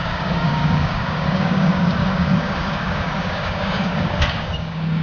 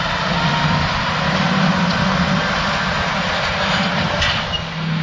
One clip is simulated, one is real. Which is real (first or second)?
second